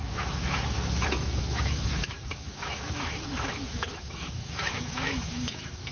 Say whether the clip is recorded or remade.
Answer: remade